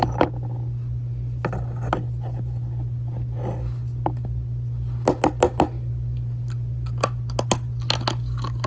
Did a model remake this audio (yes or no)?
no